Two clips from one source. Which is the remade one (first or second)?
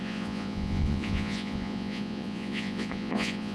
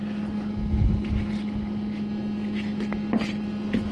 first